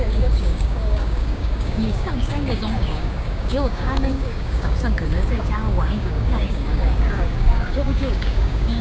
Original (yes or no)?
no